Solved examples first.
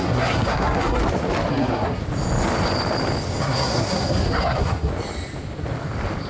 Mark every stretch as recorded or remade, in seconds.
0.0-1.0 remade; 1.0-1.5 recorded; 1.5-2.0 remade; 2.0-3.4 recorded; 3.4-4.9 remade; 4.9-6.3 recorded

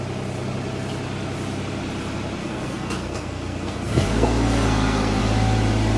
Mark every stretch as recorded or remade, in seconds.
0.0-2.4 recorded; 2.4-5.2 remade; 5.2-6.0 recorded

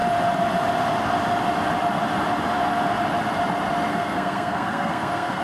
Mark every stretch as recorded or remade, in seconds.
0.0-3.9 recorded; 3.9-5.4 remade